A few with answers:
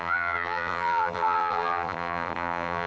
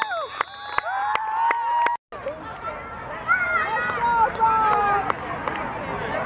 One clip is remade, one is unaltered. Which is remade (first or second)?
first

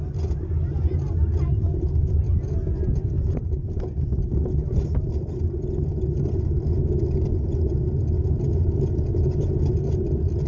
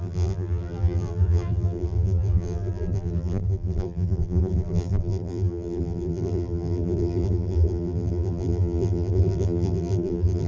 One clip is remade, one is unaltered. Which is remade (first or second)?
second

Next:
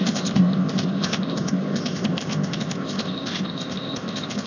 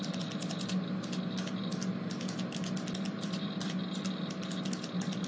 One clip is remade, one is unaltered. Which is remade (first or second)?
first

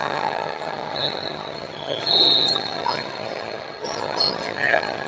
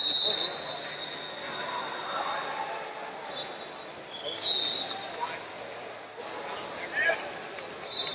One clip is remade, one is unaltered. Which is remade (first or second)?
first